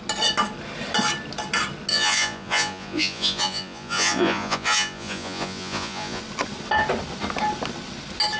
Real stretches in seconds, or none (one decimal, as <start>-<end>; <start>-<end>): 0.0-1.9; 6.2-8.4